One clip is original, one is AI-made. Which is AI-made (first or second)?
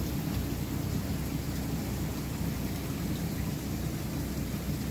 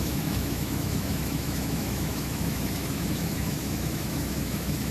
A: second